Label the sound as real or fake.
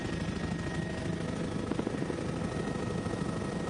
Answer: real